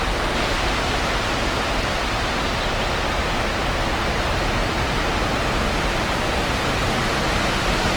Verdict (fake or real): real